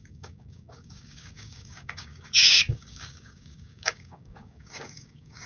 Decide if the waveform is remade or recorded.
remade